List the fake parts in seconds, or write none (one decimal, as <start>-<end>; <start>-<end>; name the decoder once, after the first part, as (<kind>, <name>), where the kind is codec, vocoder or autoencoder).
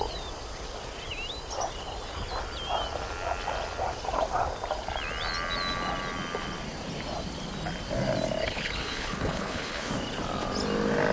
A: 8.4-9.9 (codec, HILCodec)